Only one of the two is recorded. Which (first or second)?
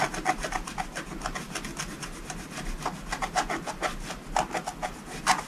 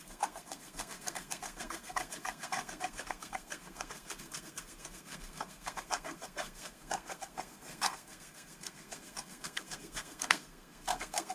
first